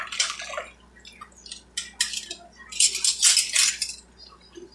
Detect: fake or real real